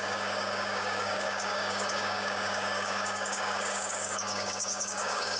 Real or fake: fake